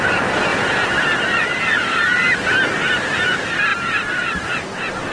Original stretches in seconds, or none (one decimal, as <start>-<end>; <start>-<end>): 0.0-0.5; 2.2-3.7; 4.4-5.1